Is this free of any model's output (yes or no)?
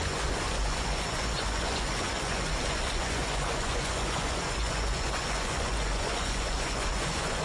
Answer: no